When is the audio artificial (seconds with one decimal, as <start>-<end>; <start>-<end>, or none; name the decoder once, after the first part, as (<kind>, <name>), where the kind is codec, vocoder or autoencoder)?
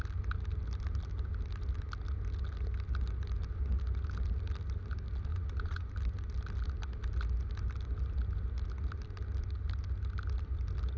5.3-5.9 (vocoder, Vocos)